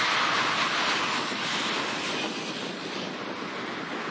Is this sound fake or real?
real